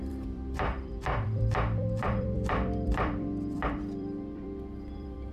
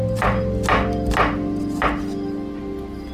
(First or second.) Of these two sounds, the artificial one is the first